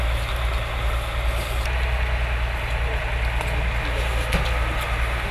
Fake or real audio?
real